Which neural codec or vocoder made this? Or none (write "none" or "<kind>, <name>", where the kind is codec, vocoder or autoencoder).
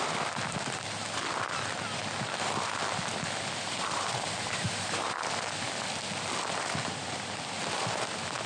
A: none